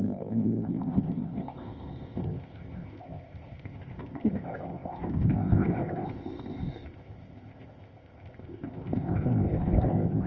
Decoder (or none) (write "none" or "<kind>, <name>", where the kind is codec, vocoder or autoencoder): codec, ZipCodec